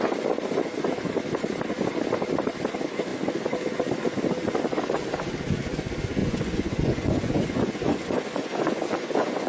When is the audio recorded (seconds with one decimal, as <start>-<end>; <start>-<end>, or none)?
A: 0.0-6.2

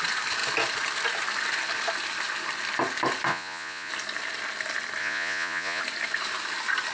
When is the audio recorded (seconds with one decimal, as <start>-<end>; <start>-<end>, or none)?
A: 0.0-3.3; 3.9-5.0; 5.8-6.9

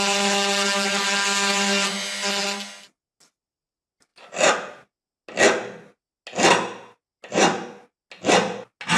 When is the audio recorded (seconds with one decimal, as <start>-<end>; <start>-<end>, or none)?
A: 0.0-9.0

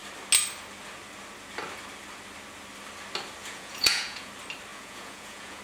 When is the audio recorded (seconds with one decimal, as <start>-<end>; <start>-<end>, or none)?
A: 0.0-3.4; 4.3-4.7

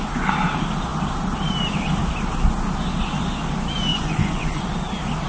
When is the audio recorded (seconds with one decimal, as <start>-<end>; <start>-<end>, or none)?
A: 0.0-3.9; 4.6-5.3